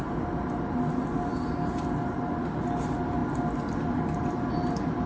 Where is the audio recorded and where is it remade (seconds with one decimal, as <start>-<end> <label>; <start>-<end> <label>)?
0.0-5.1 recorded